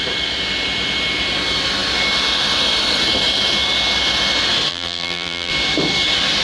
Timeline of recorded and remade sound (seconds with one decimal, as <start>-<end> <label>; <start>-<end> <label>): 0.0-4.7 recorded; 4.7-5.5 remade; 5.5-6.4 recorded